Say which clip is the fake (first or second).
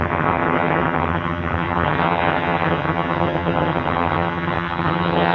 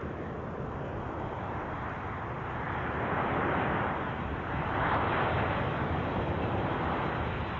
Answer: first